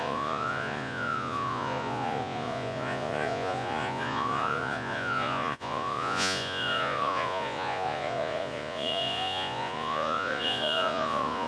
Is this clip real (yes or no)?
no